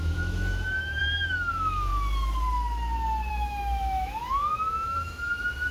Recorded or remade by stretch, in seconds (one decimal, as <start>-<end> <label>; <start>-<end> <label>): 0.0-1.9 remade; 1.9-3.3 recorded; 3.3-5.7 remade